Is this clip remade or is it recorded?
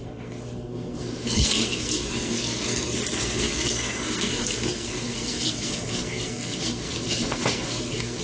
remade